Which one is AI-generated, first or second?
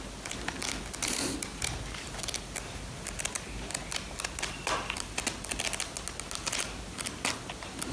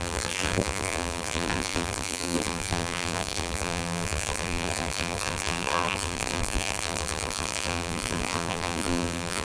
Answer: second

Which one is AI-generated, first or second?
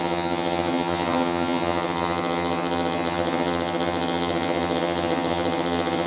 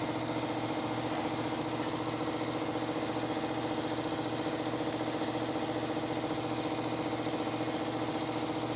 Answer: first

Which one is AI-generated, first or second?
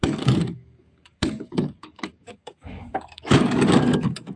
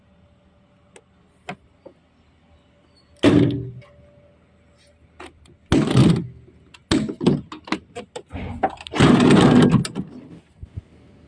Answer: first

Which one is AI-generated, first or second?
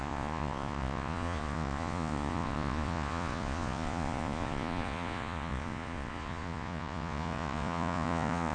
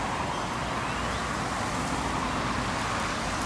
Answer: first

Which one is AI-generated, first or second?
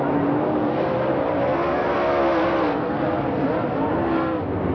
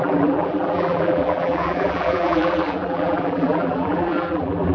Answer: second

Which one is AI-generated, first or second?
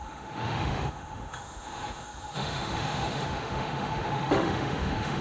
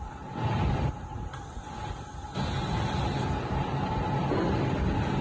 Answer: first